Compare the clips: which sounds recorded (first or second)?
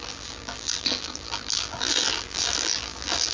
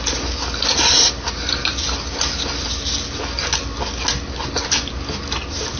second